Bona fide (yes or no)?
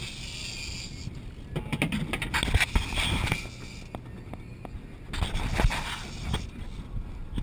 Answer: yes